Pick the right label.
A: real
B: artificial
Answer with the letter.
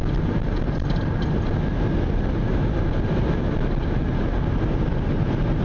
A